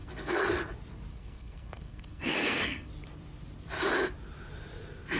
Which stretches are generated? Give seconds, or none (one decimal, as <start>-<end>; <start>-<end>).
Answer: 0.0-0.5; 1.1-2.9

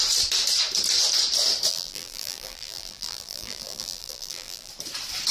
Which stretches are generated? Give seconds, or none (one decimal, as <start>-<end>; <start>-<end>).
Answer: 1.7-4.7

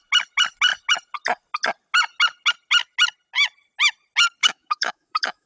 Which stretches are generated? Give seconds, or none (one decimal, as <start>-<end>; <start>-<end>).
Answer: 4.4-5.5

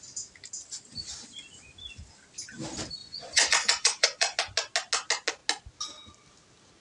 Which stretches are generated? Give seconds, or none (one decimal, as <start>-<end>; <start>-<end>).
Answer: 3.0-4.4

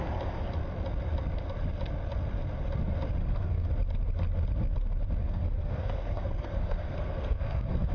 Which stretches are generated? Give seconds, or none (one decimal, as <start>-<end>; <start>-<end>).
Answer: 3.2-3.7; 5.2-7.9

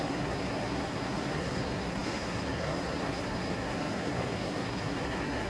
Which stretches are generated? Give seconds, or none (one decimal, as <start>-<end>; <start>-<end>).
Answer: 0.0-5.5